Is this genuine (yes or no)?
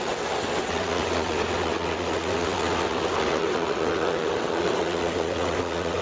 no